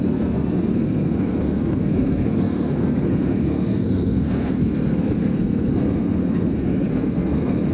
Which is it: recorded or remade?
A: remade